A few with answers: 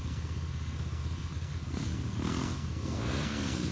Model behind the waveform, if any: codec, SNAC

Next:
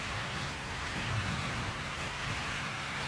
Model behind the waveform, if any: codec, SNAC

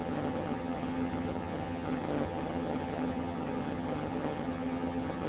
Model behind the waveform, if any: vocoder, HiFi-GAN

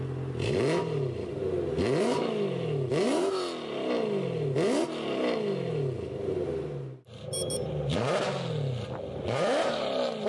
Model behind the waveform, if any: none